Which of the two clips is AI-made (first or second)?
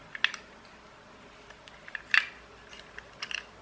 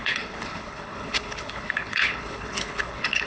second